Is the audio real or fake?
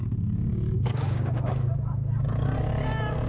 fake